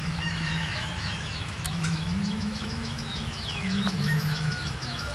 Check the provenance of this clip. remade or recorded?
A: remade